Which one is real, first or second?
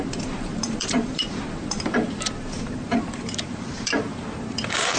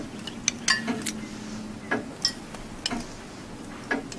second